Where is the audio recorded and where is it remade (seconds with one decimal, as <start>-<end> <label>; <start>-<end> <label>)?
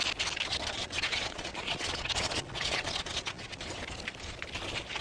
0.0-0.8 recorded; 0.8-3.6 remade; 3.6-5.0 recorded